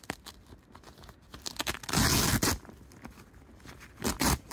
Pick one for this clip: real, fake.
real